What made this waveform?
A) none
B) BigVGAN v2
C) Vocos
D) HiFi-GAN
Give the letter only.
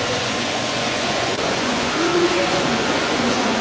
C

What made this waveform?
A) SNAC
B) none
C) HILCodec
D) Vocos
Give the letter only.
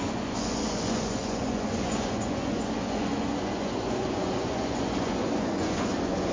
D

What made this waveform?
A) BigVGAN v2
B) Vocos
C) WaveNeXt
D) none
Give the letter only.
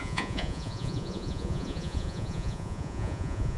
B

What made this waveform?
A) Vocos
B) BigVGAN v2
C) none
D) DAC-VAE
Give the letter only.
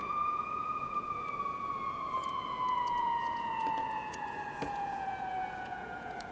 A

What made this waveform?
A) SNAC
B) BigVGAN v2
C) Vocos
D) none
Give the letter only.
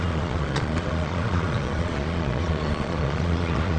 C